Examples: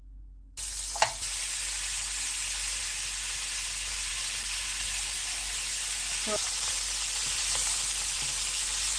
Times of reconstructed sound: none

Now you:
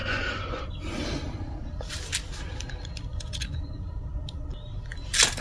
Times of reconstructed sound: 0.0-0.6 (vocoder, Vocos); 3.1-3.7

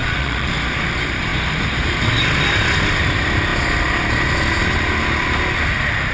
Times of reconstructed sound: 0.0-0.5 (vocoder, Vocos)

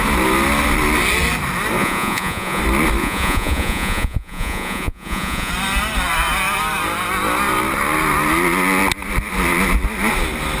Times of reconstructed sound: 1.8-2.6 (vocoder, Vocos); 3.0-5.5

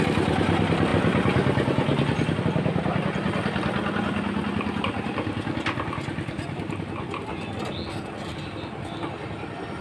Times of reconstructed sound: none

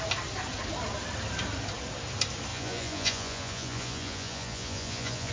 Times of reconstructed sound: 2.5-5.3 (vocoder, Vocos)

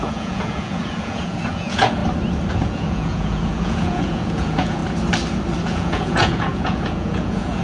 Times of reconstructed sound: 0.0-2.0 (vocoder, Vocos); 2.5-4.8; 5.6-7.6